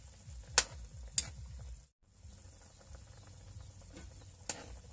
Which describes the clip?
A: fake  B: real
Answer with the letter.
B